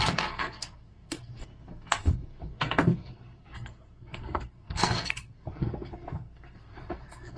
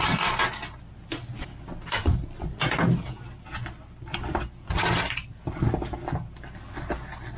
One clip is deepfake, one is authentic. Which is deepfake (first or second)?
first